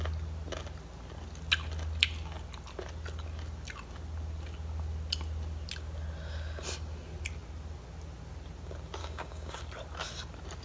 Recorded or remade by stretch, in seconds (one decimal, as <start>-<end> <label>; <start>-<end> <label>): 0.0-9.0 recorded; 9.0-9.6 remade; 9.6-10.6 recorded